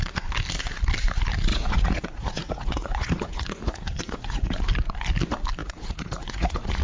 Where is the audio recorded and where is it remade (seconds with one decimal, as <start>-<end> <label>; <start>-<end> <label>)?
0.0-1.5 recorded; 1.5-4.6 remade; 4.6-5.6 recorded; 5.6-6.8 remade